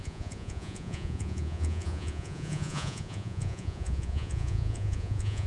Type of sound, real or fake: fake